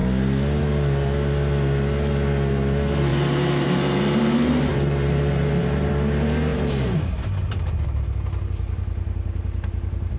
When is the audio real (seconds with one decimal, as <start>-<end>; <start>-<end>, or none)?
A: 0.0-3.1; 4.2-4.7; 5.9-6.5; 8.0-10.2